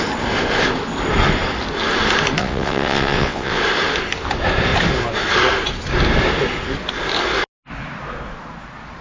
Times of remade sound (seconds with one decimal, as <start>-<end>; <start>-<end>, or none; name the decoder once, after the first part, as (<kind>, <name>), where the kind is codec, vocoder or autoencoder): 2.4-3.6 (vocoder, WaveNeXt)